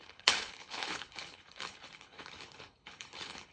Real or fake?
fake